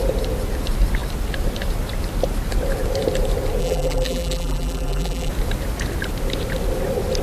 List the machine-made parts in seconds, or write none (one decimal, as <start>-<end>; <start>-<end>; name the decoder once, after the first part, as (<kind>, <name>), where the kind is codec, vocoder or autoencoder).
3.6-5.3 (vocoder, BigVGAN v2)